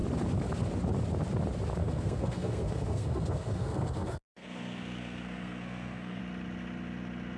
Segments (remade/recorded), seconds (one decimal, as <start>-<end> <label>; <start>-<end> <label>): 0.0-1.8 recorded; 1.8-6.2 remade; 6.2-7.4 recorded